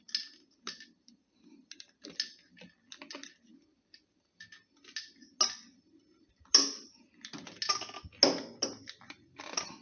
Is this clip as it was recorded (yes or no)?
yes